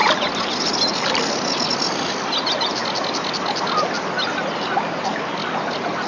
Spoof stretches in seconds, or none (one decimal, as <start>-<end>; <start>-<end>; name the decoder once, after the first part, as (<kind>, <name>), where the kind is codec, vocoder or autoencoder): none

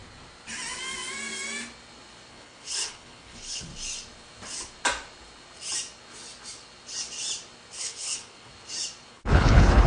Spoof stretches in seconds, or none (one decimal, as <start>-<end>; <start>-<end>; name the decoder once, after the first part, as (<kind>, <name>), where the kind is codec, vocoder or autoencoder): 2.3-3.7 (codec, HILCodec); 7.8-8.5; 9.1-9.9

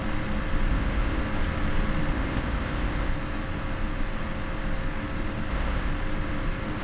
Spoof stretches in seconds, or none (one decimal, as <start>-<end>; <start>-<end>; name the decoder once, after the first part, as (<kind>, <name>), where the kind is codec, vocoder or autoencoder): 0.7-1.2 (codec, ZipCodec); 2.1-3.1; 5.5-5.9

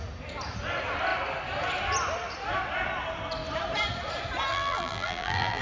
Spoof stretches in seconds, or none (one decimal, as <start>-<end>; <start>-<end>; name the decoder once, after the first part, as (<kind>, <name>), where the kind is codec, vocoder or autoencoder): 4.5-5.6 (vocoder, BigVGAN v2)

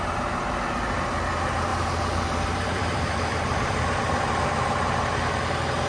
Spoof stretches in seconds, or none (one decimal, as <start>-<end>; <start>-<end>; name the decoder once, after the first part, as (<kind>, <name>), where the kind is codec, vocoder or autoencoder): 1.7-4.0 (vocoder, BigVGAN v2)